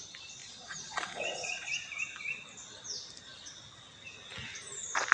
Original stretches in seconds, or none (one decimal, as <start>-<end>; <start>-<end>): 0.0-0.4; 1.7-5.1